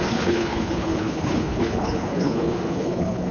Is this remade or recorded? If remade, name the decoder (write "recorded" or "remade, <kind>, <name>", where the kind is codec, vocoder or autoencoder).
remade, codec, HILCodec